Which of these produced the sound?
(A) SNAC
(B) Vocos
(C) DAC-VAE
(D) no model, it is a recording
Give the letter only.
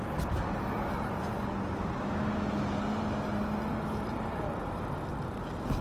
D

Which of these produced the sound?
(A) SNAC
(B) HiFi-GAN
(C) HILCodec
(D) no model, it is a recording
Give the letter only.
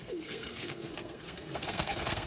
A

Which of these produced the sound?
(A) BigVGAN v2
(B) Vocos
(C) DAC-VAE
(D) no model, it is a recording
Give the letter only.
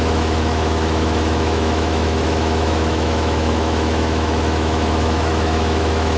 C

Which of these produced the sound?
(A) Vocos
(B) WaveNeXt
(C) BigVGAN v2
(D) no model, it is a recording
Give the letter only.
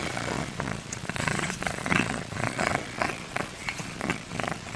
A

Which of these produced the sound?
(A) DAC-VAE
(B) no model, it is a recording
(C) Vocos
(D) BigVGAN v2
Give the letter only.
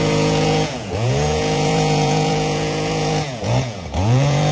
C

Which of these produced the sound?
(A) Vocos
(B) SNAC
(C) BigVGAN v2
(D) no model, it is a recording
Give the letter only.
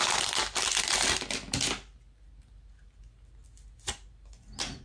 D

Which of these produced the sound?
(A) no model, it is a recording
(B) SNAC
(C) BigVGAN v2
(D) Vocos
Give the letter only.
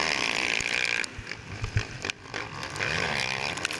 A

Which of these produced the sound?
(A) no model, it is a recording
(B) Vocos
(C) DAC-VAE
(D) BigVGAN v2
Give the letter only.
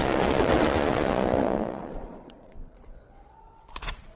B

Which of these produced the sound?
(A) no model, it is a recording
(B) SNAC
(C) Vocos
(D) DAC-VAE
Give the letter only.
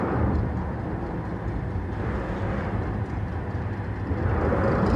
A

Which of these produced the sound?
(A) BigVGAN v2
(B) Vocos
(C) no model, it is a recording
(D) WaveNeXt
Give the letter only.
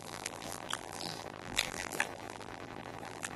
A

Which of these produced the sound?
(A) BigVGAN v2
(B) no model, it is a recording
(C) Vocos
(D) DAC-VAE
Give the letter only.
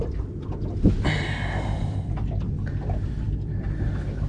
B